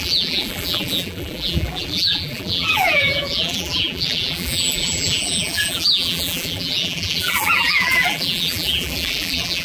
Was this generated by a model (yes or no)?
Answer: yes